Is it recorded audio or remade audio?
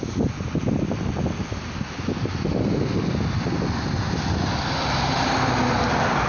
recorded